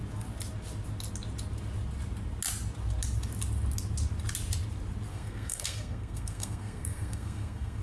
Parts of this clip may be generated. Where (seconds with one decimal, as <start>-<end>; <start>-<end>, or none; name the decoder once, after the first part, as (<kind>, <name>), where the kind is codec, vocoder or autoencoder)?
5.1-7.8 (codec, SNAC)